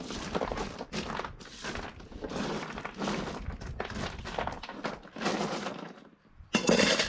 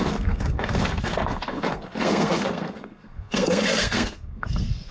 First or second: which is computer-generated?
second